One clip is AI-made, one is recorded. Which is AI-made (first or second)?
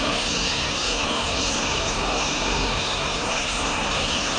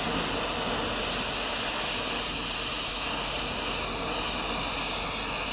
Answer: first